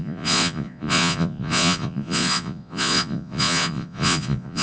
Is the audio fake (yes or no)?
yes